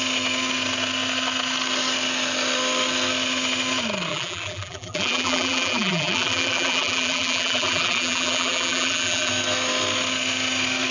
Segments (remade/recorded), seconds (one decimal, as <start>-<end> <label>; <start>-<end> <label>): 0.0-4.1 recorded; 4.1-9.3 remade; 9.3-10.9 recorded

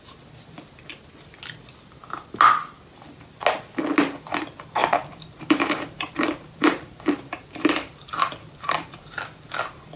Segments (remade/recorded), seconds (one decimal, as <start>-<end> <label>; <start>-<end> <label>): 0.0-4.8 recorded; 4.8-9.2 remade; 9.2-10.0 recorded

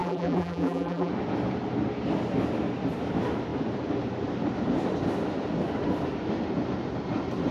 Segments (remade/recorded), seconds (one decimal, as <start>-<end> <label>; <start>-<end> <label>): 0.0-1.1 remade; 1.1-7.5 recorded

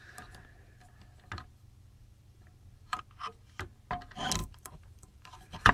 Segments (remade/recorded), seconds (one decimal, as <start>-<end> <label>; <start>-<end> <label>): 0.0-1.5 recorded; 1.5-3.0 remade; 3.0-4.4 recorded; 4.4-5.7 remade

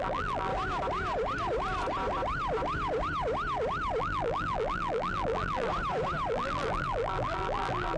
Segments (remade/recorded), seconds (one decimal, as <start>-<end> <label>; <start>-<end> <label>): 0.0-0.5 remade; 0.5-4.0 recorded; 4.0-5.7 remade; 5.7-6.3 recorded; 6.3-8.0 remade

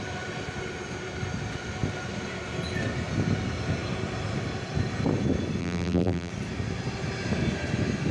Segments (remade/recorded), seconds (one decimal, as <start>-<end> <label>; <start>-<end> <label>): 0.0-5.6 recorded; 5.6-6.3 remade; 6.3-8.1 recorded

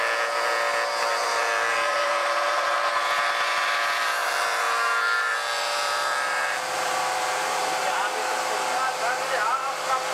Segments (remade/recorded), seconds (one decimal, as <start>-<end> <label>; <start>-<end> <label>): 0.0-1.1 recorded; 1.1-2.9 remade; 2.9-4.2 recorded; 4.2-7.7 remade; 7.7-10.1 recorded